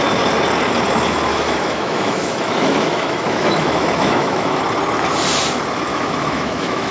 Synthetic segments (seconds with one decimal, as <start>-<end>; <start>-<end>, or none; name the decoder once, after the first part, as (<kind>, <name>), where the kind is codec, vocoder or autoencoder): 1.3-4.6 (autoencoder, DAC-VAE); 5.9-6.9